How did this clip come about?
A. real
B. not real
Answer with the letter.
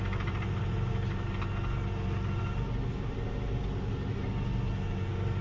A